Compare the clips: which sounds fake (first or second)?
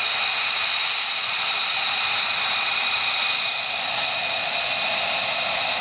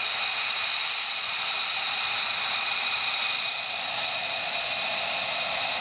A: second